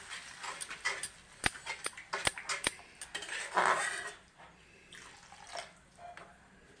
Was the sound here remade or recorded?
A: recorded